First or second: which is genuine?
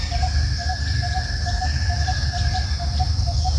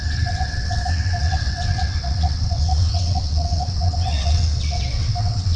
first